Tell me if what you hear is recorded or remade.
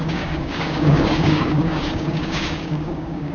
remade